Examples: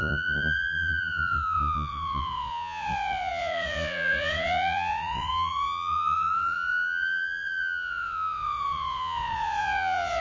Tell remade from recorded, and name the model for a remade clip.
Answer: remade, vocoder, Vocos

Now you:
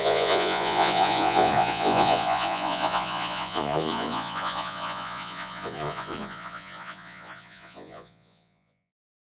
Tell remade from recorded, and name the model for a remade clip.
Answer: remade, vocoder, Vocos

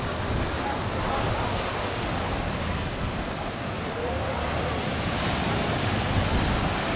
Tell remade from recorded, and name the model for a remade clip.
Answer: recorded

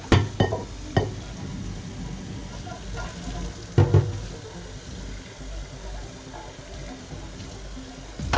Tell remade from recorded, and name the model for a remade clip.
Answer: recorded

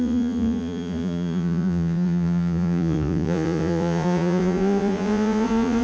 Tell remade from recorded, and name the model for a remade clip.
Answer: remade, vocoder, Vocos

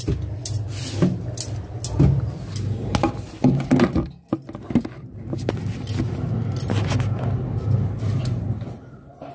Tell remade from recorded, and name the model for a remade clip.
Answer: recorded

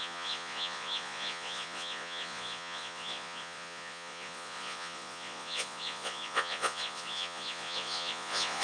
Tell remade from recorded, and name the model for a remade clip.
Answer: remade, vocoder, Vocos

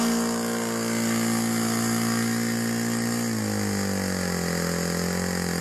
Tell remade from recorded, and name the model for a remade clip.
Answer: recorded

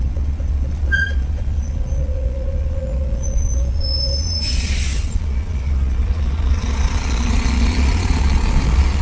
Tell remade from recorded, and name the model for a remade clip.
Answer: remade, vocoder, Vocos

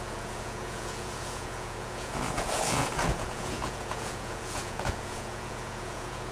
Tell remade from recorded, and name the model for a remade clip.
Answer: remade, vocoder, Vocos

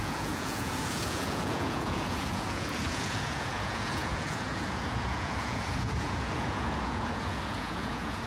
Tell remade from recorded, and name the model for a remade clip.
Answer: remade, vocoder, Vocos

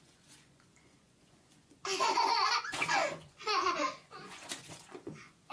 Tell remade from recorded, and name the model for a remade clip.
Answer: remade, vocoder, Vocos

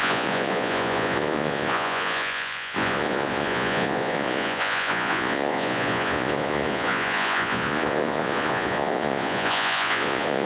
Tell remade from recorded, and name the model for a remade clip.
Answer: remade, vocoder, Vocos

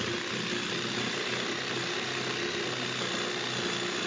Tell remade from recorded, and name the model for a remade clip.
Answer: recorded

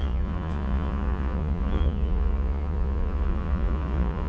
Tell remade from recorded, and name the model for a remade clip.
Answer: remade, vocoder, Vocos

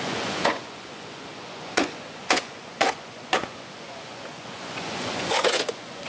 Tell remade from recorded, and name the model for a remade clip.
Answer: remade, vocoder, Vocos